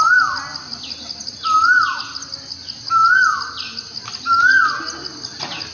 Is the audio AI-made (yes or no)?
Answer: no